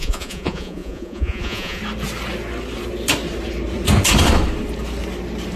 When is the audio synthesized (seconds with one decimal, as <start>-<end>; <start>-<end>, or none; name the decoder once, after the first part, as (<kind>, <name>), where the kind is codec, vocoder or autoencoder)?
0.0-1.8 (vocoder, Vocos)